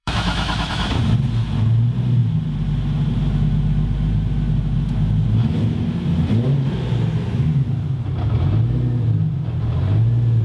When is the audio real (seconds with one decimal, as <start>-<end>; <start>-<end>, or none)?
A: 0.7-10.4